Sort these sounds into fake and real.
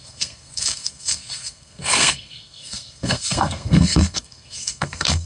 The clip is fake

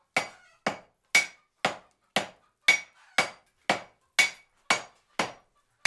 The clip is real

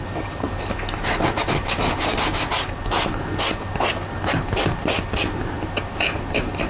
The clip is real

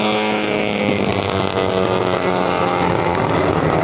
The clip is real